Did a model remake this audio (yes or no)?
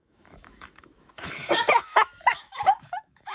yes